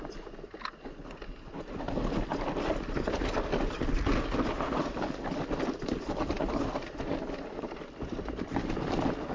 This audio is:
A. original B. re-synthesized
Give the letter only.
A